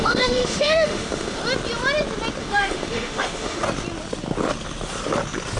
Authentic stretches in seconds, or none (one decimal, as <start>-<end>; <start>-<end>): 1.4-2.4; 3.6-5.6